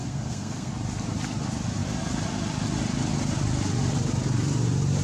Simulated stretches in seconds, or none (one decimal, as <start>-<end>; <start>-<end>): 0.0-0.7